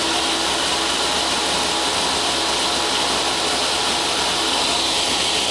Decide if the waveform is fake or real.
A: real